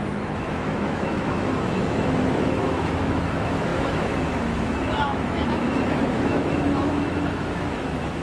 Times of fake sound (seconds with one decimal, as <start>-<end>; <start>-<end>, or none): 0.0-8.2